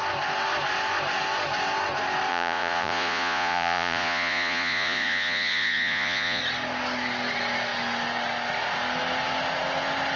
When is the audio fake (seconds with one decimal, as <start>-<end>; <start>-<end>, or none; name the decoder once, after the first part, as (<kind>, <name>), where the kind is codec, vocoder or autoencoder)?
2.3-6.4 (vocoder, Vocos)